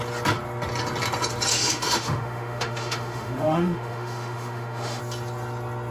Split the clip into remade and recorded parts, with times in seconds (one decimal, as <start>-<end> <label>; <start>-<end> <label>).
0.0-1.5 recorded; 1.5-5.0 remade; 5.0-5.9 recorded